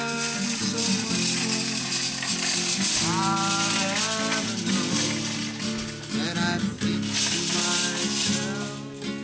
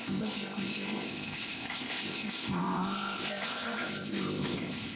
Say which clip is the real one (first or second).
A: first